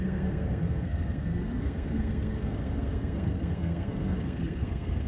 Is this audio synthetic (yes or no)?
yes